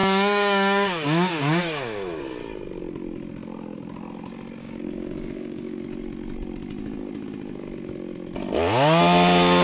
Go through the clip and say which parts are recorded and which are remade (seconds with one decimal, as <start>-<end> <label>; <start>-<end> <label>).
0.0-2.2 remade; 2.2-4.6 recorded; 4.6-5.8 remade; 5.8-9.6 recorded